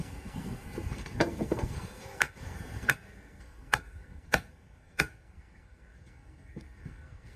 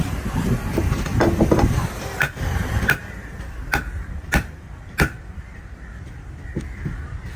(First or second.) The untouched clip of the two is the second